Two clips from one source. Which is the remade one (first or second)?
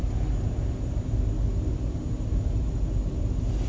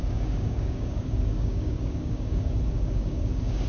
second